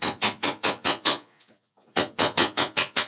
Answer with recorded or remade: remade